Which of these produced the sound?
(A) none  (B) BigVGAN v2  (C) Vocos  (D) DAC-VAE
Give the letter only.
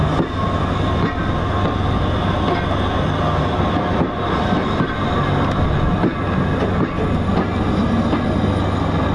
A